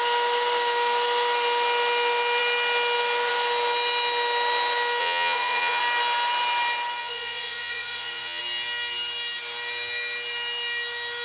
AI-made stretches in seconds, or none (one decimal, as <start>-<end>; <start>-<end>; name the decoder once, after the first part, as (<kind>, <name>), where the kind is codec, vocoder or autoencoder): 5.0-5.8 (vocoder, Vocos); 7.0-8.4